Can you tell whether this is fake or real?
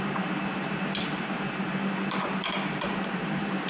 fake